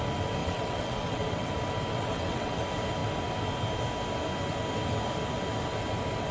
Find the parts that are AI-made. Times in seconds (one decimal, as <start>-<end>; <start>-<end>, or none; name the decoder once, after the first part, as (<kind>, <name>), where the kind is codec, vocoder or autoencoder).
0.4-1.5 (vocoder, WaveNeXt); 1.9-2.6